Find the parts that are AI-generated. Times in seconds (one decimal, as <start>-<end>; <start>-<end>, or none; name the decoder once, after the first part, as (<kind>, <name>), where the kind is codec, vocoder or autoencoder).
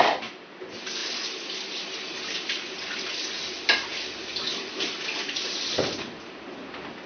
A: none